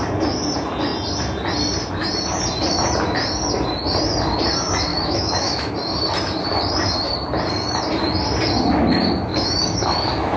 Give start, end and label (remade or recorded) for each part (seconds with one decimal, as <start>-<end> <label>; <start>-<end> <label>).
0.0-4.9 recorded; 4.9-5.7 remade; 5.7-9.3 recorded; 9.3-10.4 remade